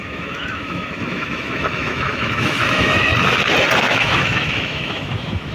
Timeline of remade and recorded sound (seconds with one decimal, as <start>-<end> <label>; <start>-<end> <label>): 0.0-3.1 remade; 3.1-3.8 recorded; 3.8-5.5 remade